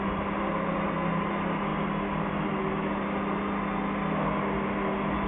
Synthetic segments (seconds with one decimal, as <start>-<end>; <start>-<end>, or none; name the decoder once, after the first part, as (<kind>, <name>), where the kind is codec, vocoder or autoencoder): none